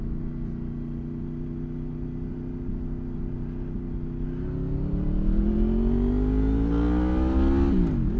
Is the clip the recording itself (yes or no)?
yes